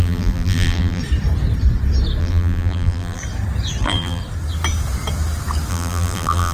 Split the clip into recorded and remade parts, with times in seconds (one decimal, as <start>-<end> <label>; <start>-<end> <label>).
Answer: 0.0-1.0 remade; 1.0-2.2 recorded; 2.2-3.2 remade; 3.2-3.8 recorded; 3.8-4.2 remade; 4.2-5.7 recorded; 5.7-6.5 remade